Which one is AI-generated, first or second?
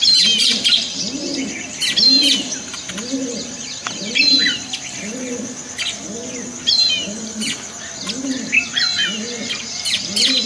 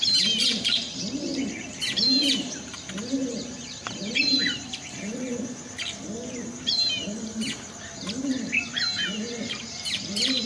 second